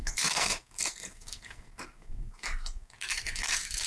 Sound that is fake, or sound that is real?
fake